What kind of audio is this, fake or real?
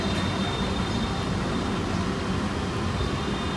real